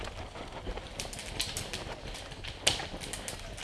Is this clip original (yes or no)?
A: yes